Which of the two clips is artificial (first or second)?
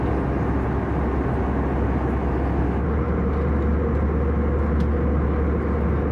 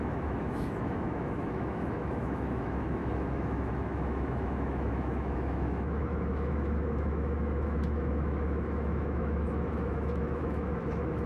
second